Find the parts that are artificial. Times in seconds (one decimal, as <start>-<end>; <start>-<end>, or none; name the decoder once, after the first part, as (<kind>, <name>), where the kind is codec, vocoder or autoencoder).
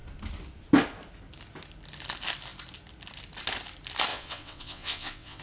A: 4.1-5.4 (vocoder, WaveNeXt)